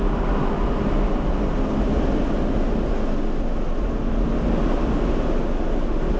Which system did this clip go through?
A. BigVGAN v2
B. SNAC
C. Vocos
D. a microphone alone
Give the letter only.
D